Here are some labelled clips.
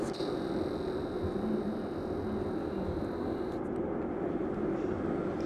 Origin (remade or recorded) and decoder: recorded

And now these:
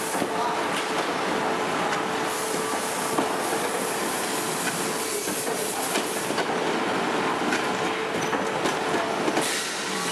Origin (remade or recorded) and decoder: recorded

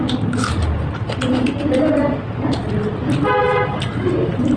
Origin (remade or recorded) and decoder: recorded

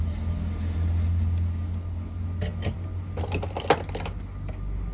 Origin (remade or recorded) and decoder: recorded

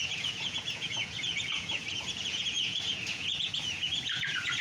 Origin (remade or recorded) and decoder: remade, vocoder, Vocos